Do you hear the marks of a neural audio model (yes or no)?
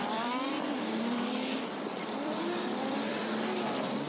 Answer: yes